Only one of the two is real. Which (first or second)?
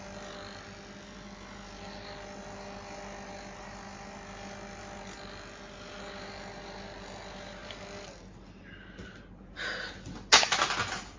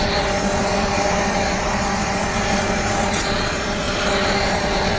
first